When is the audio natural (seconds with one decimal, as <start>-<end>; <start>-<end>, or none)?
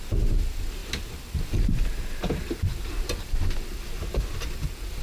0.0-5.0